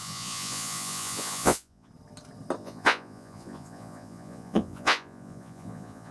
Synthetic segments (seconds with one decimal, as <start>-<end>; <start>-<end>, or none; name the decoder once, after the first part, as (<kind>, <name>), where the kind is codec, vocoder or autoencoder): 0.0-1.9 (vocoder, Vocos); 2.6-6.1